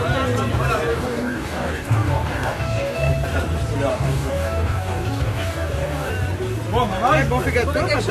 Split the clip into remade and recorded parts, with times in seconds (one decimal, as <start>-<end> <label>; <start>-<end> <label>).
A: 0.0-0.9 recorded; 0.9-3.1 remade; 3.1-3.9 recorded; 3.9-6.1 remade; 6.1-8.1 recorded